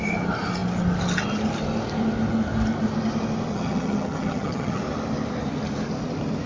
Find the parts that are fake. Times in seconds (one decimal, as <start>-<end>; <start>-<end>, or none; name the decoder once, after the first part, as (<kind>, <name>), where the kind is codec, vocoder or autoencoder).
3.5-4.8 (vocoder, HiFi-GAN)